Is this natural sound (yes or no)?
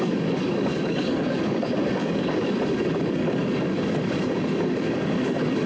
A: no